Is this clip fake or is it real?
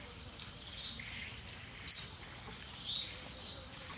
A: real